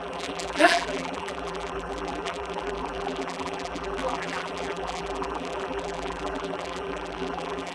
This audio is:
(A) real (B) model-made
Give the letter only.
B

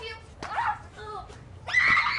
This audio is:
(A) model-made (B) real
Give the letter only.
B